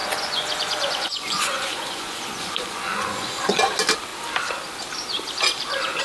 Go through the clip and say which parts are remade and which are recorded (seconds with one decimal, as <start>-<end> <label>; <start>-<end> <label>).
0.0-3.6 remade; 3.6-6.0 recorded